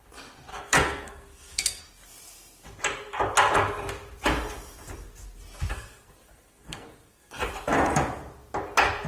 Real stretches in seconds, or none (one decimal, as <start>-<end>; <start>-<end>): 0.0-0.5; 1.8-5.7; 7.5-9.1